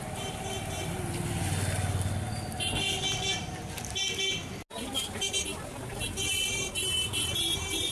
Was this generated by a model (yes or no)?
no